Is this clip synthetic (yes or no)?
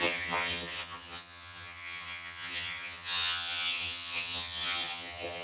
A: yes